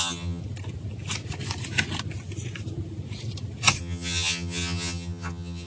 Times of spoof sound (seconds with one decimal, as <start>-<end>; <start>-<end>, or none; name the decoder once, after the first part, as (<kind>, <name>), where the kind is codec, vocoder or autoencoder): 0.0-0.4 (vocoder, HiFi-GAN); 3.8-5.7